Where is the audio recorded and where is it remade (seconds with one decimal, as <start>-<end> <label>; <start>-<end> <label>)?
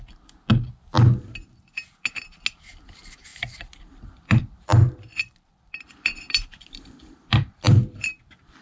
0.0-3.3 recorded; 3.3-8.6 remade